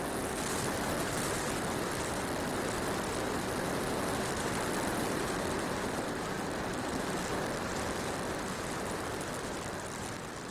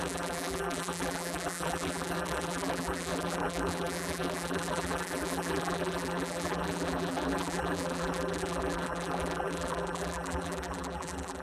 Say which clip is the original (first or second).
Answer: first